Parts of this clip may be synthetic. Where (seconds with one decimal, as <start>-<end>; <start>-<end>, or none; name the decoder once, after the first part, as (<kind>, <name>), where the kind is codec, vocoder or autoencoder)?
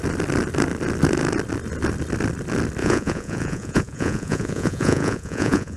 2.8-5.8 (vocoder, Vocos)